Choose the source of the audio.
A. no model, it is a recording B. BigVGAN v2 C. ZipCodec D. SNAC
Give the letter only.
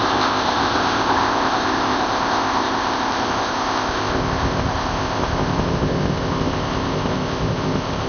C